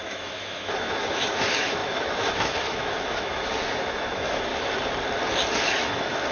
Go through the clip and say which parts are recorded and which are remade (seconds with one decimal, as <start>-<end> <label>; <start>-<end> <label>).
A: 0.0-4.5 remade; 4.5-5.5 recorded; 5.5-6.3 remade